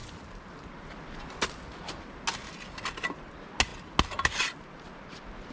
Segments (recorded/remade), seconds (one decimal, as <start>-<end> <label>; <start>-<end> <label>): 0.0-5.5 recorded